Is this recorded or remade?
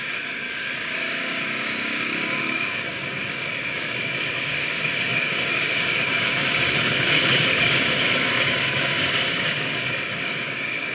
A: remade